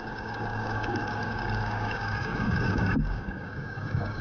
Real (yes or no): no